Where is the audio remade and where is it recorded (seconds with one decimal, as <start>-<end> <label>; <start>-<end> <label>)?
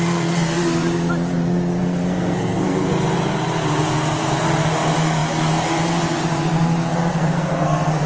0.0-1.8 recorded; 1.8-2.9 remade; 2.9-7.1 recorded; 7.1-8.1 remade